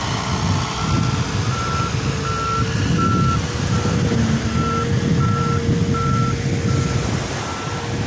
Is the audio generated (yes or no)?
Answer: no